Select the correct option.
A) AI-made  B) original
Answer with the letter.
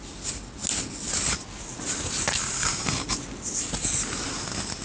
B